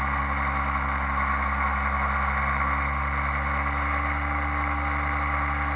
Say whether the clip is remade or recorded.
recorded